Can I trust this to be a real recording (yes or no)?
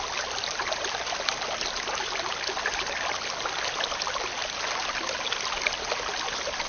yes